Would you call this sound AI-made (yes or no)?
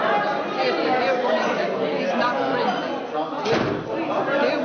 no